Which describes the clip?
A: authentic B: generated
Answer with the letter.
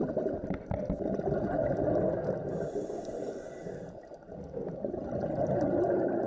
A